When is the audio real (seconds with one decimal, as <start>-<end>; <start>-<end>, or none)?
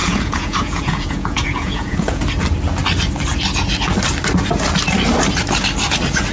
2.2-6.3